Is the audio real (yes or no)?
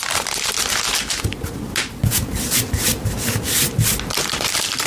yes